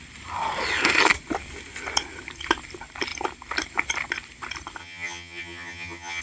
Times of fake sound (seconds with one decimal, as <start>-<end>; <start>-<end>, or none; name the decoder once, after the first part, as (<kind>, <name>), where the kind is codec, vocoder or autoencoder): 4.8-6.2 (vocoder, HiFi-GAN)